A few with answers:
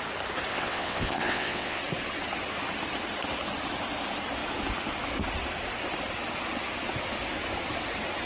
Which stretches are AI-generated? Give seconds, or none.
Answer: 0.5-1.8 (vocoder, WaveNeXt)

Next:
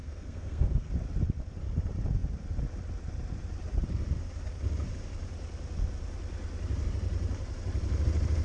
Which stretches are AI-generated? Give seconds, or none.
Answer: 0.0-0.9 (codec, SNAC)

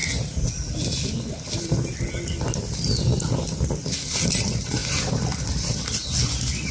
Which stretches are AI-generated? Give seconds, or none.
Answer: none

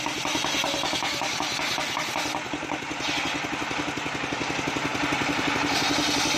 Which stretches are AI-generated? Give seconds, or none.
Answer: none

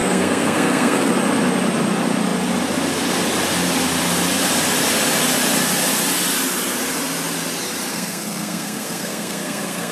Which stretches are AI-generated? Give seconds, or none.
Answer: 0.0-1.1 (codec, SNAC); 7.9-9.9

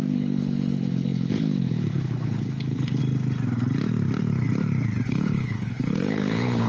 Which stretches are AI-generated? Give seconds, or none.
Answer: 0.0-3.0 (codec, HILCodec); 5.1-6.7